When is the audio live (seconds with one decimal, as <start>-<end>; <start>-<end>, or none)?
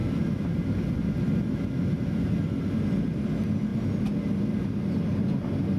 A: 0.0-5.8